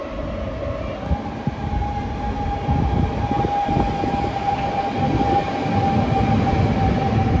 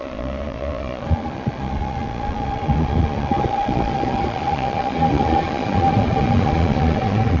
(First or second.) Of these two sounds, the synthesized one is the second